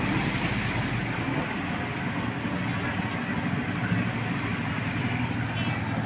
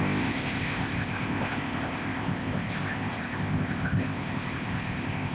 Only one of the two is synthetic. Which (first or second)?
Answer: second